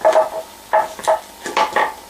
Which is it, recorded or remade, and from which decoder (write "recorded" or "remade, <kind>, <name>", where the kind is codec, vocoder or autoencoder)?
recorded